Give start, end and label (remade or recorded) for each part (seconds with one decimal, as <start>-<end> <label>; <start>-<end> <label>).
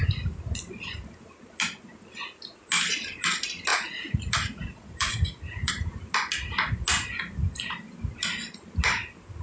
0.0-3.7 recorded; 3.7-5.7 remade; 5.7-9.4 recorded